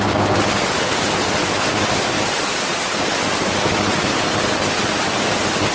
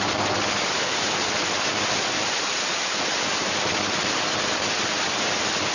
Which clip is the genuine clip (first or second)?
first